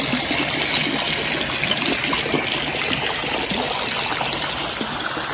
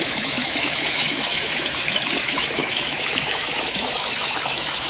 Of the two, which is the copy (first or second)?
second